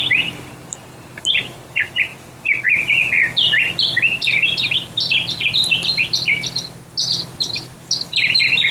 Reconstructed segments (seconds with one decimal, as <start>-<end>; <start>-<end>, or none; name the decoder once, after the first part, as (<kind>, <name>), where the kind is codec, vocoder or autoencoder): none